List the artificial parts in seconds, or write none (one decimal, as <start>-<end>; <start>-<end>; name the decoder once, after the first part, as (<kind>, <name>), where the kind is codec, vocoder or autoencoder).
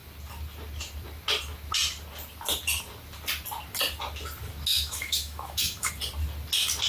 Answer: 4.7-5.9 (autoencoder, DAC-VAE)